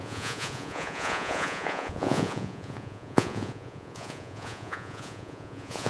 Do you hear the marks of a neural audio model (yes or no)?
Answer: yes